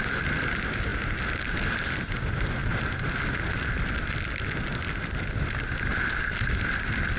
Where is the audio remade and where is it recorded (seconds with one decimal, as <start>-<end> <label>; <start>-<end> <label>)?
0.0-7.2 recorded